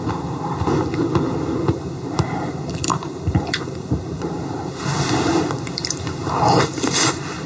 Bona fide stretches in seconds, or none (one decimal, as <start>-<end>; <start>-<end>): 0.0-2.9